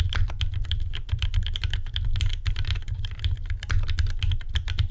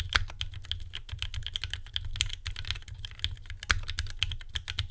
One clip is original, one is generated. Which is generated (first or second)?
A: first